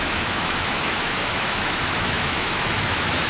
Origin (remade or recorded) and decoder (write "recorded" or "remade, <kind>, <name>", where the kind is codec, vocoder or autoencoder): remade, autoencoder, DAC-VAE